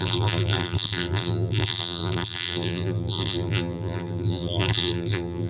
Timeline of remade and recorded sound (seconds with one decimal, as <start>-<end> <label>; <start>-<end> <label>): 0.0-5.5 remade